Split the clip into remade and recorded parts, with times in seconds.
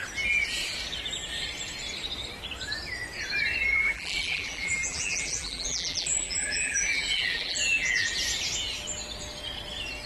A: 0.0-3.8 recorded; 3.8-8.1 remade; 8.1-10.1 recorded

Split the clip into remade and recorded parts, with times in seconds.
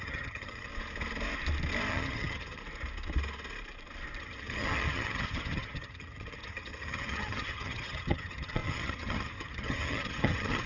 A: 0.0-0.7 remade; 0.7-1.9 recorded; 1.9-2.6 remade; 2.6-4.2 recorded; 4.2-10.7 remade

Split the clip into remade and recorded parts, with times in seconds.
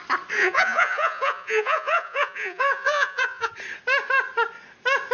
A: 0.0-0.4 recorded; 0.4-3.5 remade; 3.5-5.1 recorded